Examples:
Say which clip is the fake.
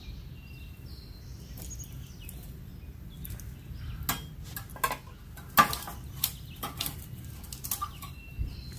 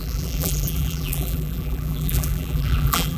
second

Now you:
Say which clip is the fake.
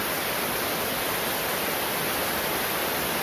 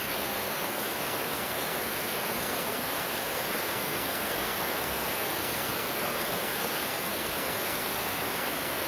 second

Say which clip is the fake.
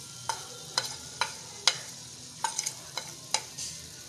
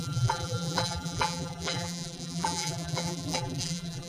second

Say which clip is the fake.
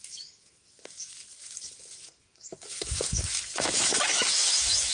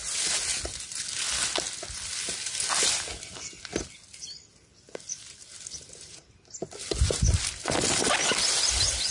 first